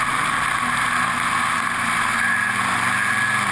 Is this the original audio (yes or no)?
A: yes